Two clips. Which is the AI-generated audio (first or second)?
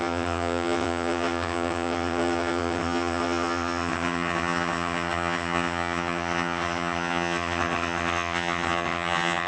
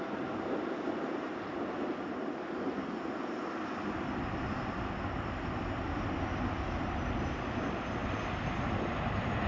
first